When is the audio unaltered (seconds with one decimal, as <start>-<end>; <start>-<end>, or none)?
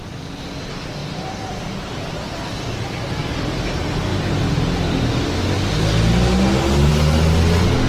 0.0-7.9